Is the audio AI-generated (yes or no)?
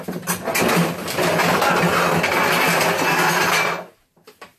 no